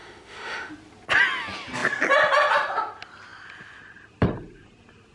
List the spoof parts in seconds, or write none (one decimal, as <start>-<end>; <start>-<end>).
0.0-0.7